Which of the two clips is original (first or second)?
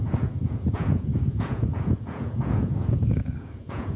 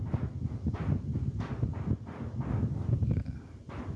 second